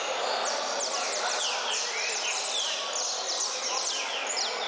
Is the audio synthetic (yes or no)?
no